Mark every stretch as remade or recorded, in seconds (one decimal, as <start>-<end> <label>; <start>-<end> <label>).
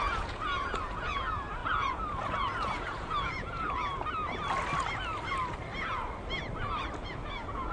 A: 0.0-3.9 remade; 3.9-7.0 recorded; 7.0-7.7 remade